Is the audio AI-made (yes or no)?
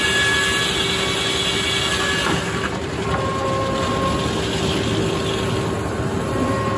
no